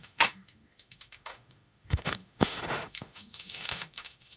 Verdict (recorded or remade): remade